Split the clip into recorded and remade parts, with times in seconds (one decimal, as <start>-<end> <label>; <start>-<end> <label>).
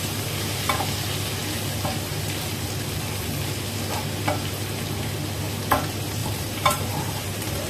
0.0-6.2 recorded; 6.2-7.7 remade